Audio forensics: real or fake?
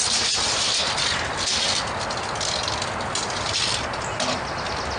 real